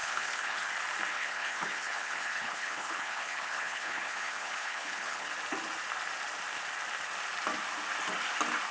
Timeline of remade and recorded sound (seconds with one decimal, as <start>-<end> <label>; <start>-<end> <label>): 0.0-0.7 remade; 0.7-1.1 recorded; 1.1-5.3 remade; 5.3-8.7 recorded